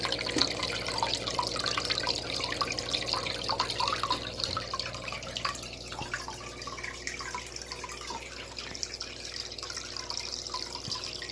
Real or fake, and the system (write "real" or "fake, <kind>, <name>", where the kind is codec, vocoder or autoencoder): real